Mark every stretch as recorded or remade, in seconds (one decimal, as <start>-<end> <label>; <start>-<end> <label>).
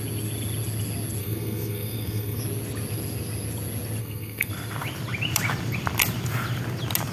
0.0-1.2 recorded; 1.2-2.4 remade; 2.4-4.0 recorded; 4.0-4.5 remade; 4.5-7.1 recorded